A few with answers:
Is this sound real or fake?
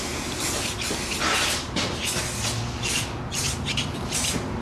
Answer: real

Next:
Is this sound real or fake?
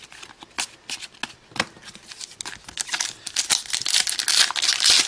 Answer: real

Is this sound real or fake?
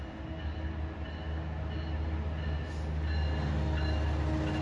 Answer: real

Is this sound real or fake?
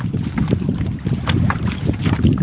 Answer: fake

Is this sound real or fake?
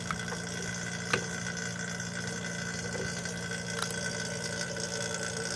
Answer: real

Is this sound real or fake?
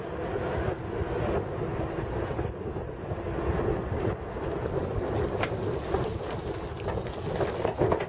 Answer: real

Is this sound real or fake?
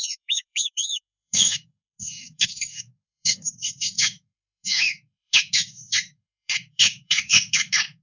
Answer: fake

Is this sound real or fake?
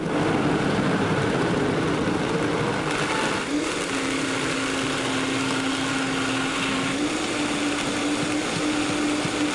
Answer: real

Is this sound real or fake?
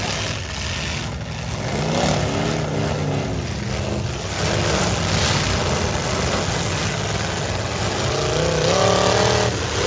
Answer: real